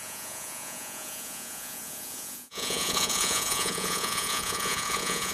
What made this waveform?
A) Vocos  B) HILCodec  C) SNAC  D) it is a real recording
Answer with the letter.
A